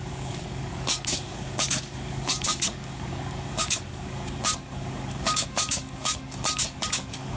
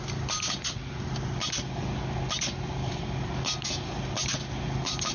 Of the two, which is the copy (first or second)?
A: first